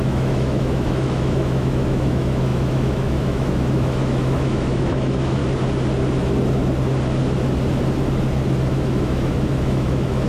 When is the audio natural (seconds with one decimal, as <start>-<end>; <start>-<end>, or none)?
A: 5.4-8.7